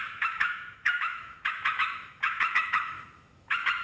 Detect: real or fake fake